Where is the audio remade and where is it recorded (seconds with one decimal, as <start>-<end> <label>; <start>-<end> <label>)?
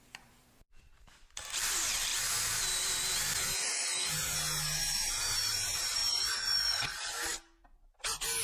0.0-2.1 remade; 2.1-4.8 recorded; 4.8-6.0 remade; 6.0-8.4 recorded